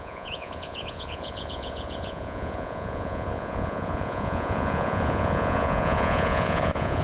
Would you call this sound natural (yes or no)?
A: no